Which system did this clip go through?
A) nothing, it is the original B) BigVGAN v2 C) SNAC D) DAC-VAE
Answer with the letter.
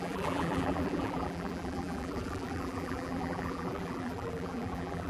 B